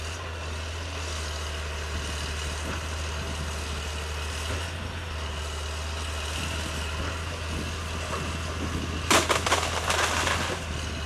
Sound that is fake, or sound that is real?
real